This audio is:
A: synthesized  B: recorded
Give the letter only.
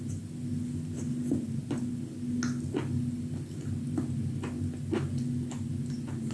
B